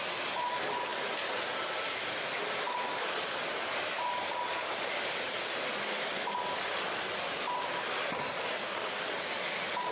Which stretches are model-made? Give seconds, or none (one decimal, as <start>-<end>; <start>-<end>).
none